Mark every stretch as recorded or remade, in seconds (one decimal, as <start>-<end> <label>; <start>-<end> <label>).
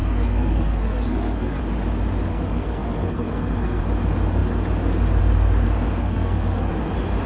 0.0-1.6 remade; 1.6-2.3 recorded; 2.3-3.8 remade; 3.8-6.0 recorded; 6.0-6.7 remade; 6.7-7.3 recorded